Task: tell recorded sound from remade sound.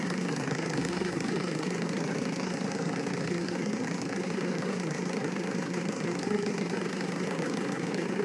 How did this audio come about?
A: remade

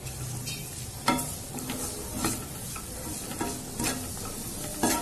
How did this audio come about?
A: recorded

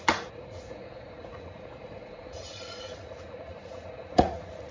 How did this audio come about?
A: remade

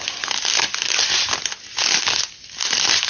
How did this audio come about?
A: recorded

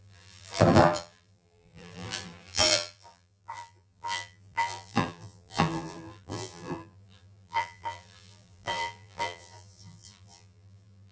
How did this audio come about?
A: remade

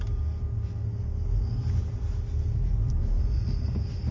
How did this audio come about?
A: recorded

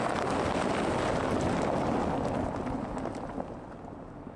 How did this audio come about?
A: recorded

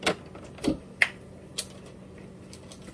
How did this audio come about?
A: recorded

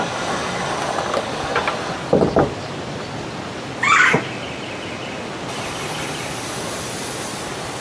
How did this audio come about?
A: recorded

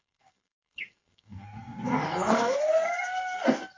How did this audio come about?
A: remade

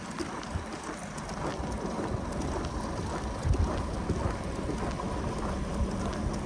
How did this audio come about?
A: recorded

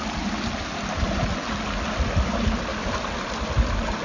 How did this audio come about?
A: recorded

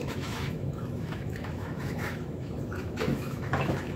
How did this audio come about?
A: remade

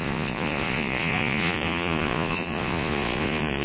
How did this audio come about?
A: remade